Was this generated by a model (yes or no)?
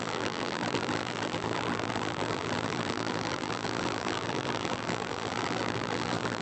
yes